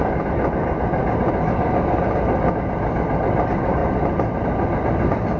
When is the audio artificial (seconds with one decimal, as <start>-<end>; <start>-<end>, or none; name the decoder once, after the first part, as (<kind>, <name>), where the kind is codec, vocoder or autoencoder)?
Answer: none